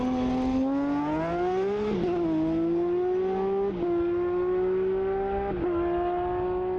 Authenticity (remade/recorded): recorded